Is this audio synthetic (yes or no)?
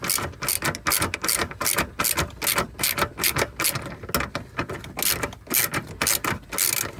no